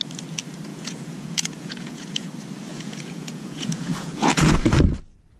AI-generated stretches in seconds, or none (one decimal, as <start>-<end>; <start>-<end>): 0.7-2.3; 2.7-4.7